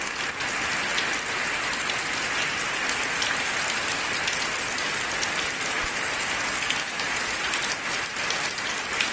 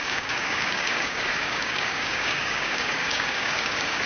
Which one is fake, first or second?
second